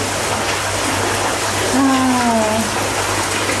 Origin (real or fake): real